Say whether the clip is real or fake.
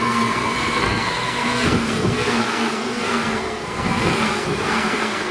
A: fake